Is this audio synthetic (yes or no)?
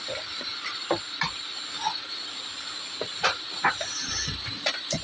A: no